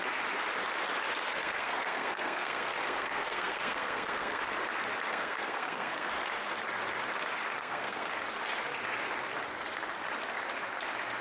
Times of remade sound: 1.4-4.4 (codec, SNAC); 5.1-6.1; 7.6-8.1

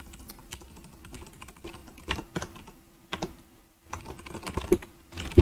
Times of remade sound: 1.8-4.0 (vocoder, BigVGAN v2); 4.7-5.4

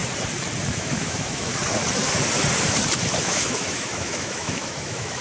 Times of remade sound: 0.7-1.5 (autoencoder, DAC-VAE); 3.2-5.2

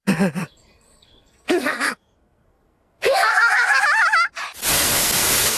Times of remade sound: 0.4-3.8 (codec, SNAC); 4.7-5.6

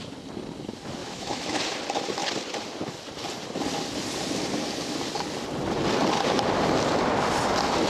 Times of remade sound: 1.0-1.6 (autoencoder, DAC-VAE)

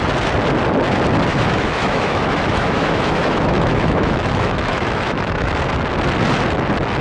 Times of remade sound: 1.3-5.5 (autoencoder, DAC-VAE)

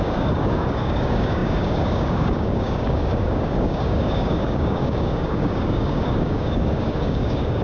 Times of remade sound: 0.0-7.6 (codec, DAC)

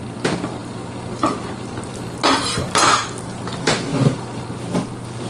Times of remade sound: none